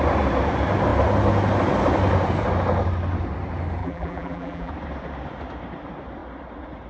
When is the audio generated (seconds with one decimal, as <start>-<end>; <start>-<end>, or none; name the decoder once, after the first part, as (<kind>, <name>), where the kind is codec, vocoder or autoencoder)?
3.8-4.7 (vocoder, BigVGAN v2)